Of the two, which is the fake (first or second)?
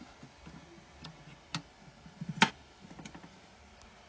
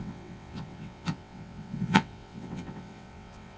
second